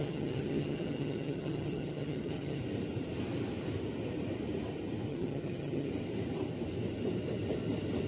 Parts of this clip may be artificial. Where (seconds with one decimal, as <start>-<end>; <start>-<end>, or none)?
0.0-2.6; 5.1-5.9